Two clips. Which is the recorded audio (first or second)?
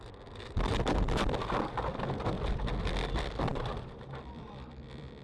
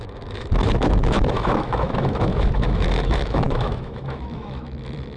first